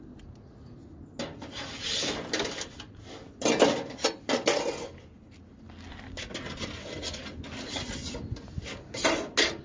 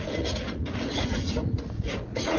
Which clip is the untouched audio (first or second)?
first